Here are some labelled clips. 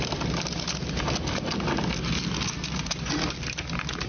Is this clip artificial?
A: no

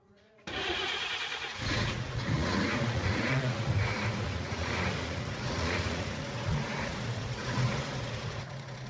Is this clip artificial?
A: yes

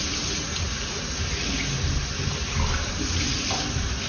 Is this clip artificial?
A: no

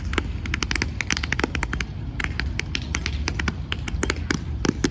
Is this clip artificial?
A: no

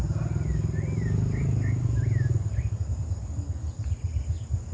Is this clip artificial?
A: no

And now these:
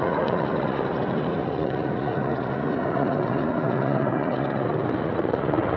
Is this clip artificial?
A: yes